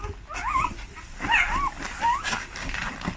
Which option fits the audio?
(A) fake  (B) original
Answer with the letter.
B